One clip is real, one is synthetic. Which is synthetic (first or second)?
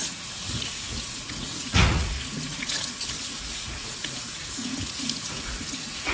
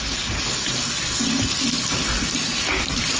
first